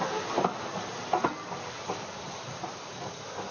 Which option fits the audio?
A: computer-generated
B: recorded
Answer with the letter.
B